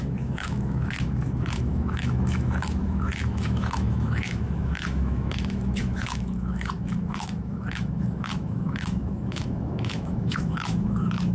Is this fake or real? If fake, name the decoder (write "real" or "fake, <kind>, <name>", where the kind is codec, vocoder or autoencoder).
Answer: fake, autoencoder, DAC-VAE